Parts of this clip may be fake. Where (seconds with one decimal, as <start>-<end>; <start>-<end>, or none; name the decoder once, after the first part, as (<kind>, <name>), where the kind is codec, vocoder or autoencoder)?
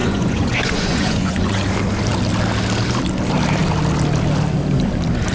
0.0-1.6 (vocoder, Vocos)